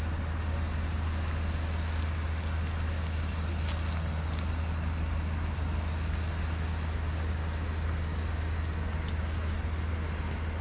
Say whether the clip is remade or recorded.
recorded